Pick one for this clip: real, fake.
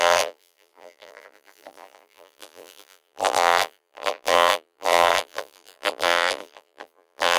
fake